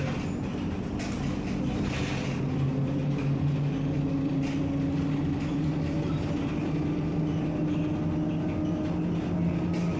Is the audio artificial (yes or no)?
no